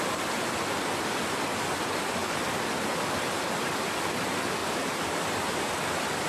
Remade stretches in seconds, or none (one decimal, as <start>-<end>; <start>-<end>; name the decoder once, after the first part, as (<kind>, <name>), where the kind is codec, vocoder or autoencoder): none